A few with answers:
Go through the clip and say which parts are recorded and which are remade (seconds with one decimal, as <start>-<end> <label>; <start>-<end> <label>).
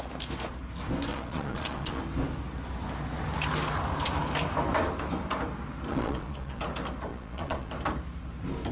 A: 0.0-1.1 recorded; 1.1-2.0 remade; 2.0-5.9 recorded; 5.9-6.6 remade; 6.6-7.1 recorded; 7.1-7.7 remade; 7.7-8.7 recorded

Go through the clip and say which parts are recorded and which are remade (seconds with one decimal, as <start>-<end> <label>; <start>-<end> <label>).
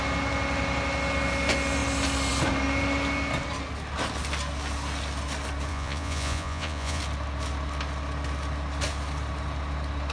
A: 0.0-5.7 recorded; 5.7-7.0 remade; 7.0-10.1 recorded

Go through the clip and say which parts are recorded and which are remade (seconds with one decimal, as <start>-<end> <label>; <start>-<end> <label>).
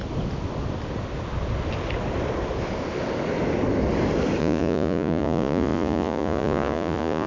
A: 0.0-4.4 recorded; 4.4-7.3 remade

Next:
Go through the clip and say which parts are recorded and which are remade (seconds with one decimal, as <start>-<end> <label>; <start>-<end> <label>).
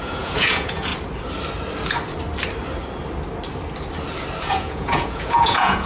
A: 0.0-0.9 remade; 0.9-4.4 recorded; 4.4-5.9 remade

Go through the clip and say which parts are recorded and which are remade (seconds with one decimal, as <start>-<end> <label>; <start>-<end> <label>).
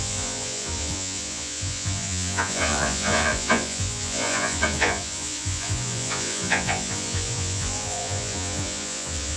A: 0.0-9.4 remade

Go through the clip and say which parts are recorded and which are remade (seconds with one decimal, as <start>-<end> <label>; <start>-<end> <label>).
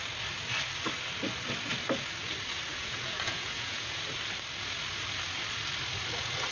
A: 0.0-2.7 recorded; 2.7-4.0 remade; 4.0-6.5 recorded